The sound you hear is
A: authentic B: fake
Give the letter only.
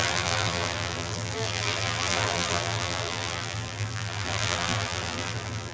B